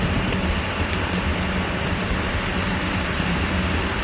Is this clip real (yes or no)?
no